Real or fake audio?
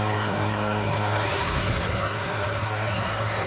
fake